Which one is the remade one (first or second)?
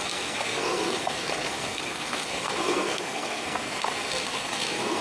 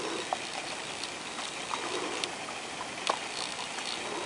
first